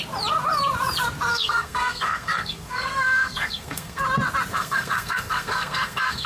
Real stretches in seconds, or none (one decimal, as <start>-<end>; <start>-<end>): 0.0-1.3; 4.0-4.5